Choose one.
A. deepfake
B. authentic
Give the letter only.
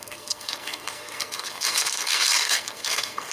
A